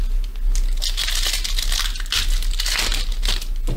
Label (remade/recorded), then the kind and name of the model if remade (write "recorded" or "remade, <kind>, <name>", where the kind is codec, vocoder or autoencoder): recorded